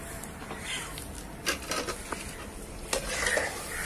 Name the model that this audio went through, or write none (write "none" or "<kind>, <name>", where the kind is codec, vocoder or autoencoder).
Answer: none